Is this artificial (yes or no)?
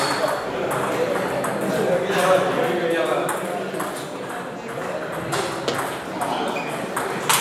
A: no